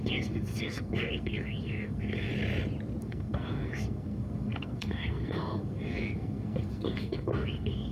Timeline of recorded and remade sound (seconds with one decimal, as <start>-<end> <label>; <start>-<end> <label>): 0.0-2.3 remade; 2.3-3.0 recorded; 3.0-7.9 remade